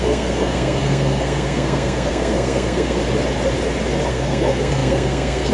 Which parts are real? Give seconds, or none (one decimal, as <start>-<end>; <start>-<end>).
3.0-4.1